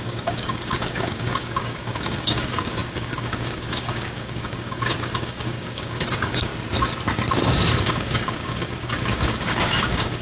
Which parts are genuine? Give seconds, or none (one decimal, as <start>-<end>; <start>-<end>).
6.5-7.8